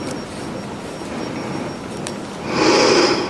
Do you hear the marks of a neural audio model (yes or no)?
no